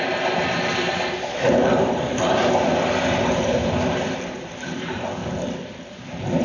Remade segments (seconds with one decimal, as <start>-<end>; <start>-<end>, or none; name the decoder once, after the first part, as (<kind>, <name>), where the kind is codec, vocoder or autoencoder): 0.0-5.2 (vocoder, BigVGAN v2); 6.0-6.4